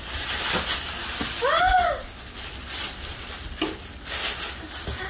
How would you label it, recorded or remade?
recorded